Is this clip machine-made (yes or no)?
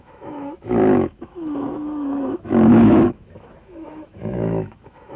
yes